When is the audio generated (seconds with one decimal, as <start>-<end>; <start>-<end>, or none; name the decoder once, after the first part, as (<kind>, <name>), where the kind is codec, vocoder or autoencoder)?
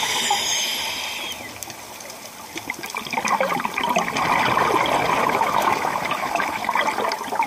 0.0-0.7 (autoencoder, DAC-VAE); 5.2-6.6